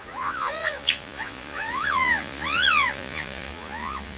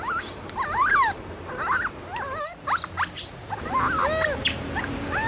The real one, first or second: second